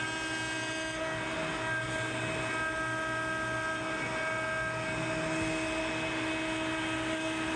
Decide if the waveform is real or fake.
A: real